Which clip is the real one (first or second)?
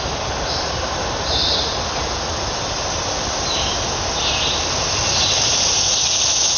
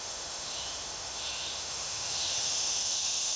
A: first